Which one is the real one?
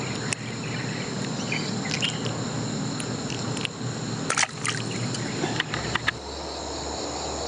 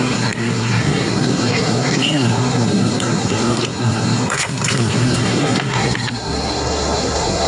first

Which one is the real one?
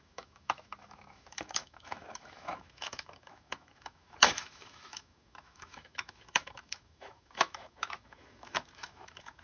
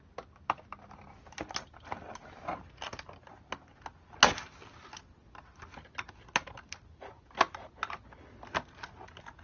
second